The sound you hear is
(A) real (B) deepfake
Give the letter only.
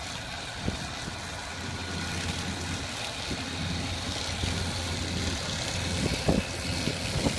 A